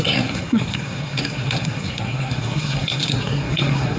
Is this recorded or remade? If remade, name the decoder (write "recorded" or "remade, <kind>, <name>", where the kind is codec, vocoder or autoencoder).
remade, codec, SNAC